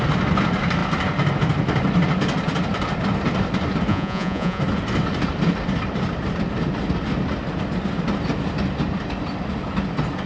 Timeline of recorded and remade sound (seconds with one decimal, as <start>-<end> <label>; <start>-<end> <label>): 0.0-3.9 recorded; 3.9-4.6 remade; 4.6-10.3 recorded